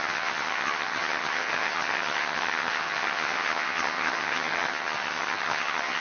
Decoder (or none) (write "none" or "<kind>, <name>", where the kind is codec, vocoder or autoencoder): vocoder, HiFi-GAN